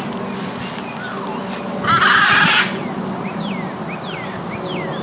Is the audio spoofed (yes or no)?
no